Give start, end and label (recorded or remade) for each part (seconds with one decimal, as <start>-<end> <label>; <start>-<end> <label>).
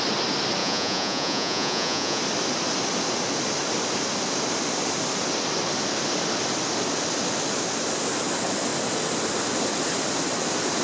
0.0-0.6 recorded; 0.6-2.2 remade; 2.2-10.8 recorded